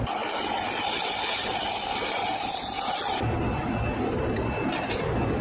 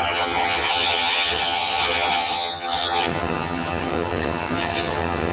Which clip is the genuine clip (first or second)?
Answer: first